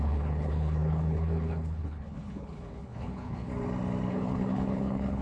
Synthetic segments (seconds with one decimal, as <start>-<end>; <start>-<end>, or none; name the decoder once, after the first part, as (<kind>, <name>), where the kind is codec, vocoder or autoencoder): 0.0-3.5 (codec, HILCodec); 4.1-5.2